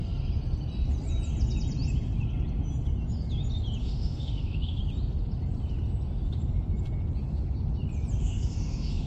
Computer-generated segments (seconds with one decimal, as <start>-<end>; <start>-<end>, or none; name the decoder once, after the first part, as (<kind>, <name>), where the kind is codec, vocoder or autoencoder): 3.8-4.8 (autoencoder, DAC-VAE); 8.2-9.1